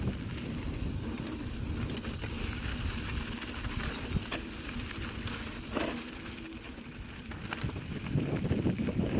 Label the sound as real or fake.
real